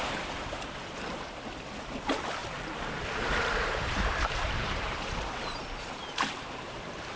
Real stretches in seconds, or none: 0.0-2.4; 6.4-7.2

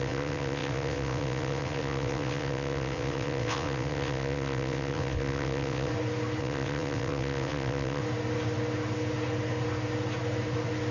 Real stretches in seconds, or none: 5.9-6.4; 8.0-10.9